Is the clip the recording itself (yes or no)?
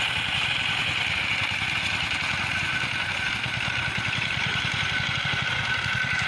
yes